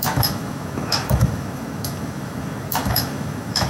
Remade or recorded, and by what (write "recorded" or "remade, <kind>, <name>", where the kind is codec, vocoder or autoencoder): remade, autoencoder, DAC-VAE